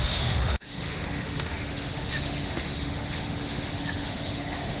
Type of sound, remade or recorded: remade